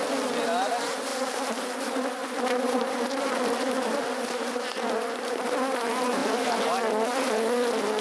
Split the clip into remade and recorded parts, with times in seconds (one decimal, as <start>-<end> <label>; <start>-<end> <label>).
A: 0.0-1.1 recorded; 1.1-1.7 remade; 1.7-2.2 recorded; 2.2-3.2 remade; 3.2-8.0 recorded